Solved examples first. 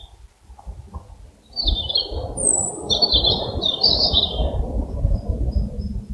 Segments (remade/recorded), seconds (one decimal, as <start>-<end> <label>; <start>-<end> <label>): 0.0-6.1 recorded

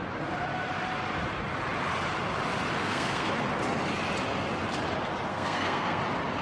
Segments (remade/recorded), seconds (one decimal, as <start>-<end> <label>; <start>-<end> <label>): 0.0-2.8 recorded; 2.8-3.3 remade; 3.3-5.3 recorded; 5.3-6.0 remade; 6.0-6.4 recorded

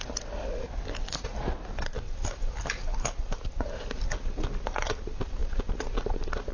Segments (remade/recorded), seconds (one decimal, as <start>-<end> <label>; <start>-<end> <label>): 0.0-6.5 recorded

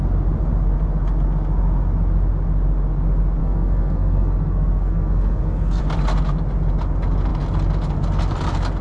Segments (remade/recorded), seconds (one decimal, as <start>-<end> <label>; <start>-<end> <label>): 0.0-3.4 recorded; 3.4-5.8 remade; 5.8-8.8 recorded

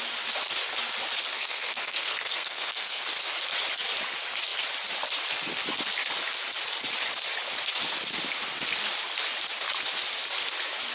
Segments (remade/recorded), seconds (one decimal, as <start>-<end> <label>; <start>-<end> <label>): 0.0-1.3 recorded; 1.3-3.0 remade; 3.0-10.9 recorded

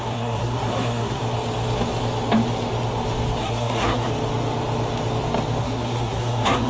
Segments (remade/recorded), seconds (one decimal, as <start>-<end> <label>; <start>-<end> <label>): 0.0-1.2 remade; 1.2-3.4 recorded; 3.4-4.1 remade; 4.1-5.6 recorded; 5.6-6.7 remade

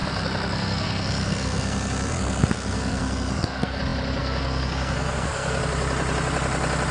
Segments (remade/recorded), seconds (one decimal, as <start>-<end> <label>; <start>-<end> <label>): 0.0-3.8 remade; 3.8-4.2 recorded; 4.2-5.6 remade; 5.6-6.9 recorded